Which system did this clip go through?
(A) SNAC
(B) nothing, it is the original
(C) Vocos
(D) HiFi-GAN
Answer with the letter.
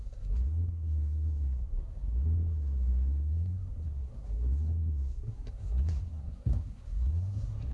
A